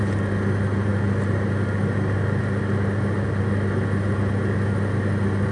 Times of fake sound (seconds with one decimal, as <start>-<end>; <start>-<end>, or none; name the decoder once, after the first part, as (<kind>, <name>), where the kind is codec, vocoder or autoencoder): none